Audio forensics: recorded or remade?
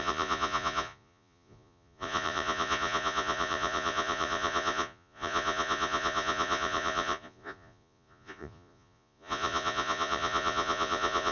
remade